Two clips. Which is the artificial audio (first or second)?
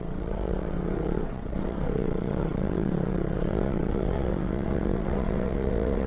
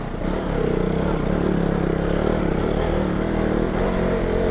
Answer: first